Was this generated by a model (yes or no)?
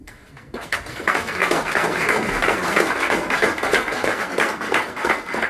yes